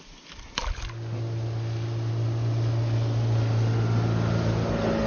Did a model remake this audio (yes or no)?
no